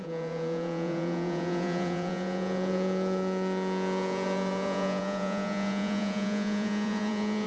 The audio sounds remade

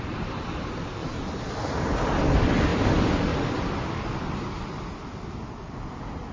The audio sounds recorded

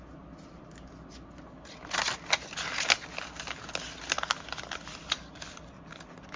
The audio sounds recorded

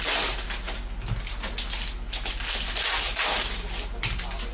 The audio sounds recorded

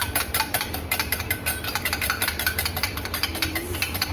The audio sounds remade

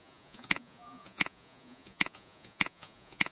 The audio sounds remade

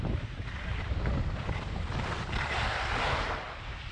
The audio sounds recorded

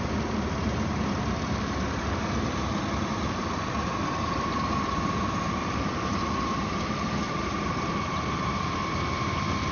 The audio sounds remade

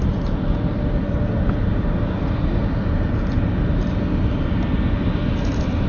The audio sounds recorded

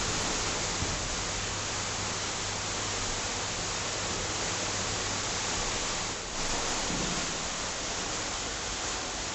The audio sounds recorded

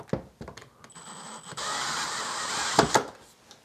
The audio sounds recorded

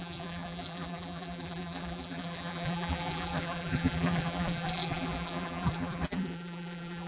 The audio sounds remade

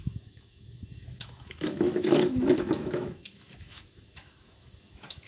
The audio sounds remade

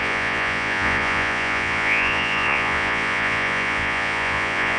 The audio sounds remade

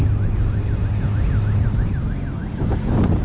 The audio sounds recorded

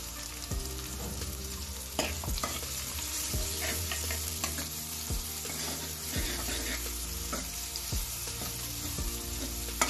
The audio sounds remade